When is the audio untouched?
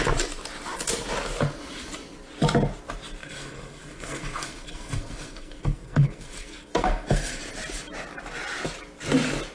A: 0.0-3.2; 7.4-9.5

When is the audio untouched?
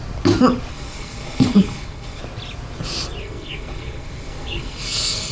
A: 0.0-0.7; 2.2-3.2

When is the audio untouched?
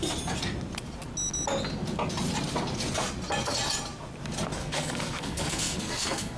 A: 0.0-4.6